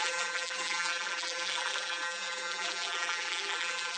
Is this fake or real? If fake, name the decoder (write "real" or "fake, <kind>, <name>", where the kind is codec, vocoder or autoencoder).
fake, vocoder, BigVGAN v2